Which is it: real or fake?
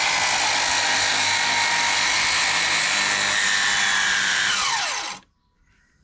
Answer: real